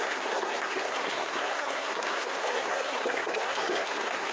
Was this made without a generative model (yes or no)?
no